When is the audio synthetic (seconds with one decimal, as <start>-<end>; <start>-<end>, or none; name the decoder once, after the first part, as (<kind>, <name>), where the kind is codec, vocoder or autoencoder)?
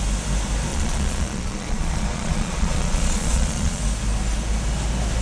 0.7-3.8 (vocoder, Vocos)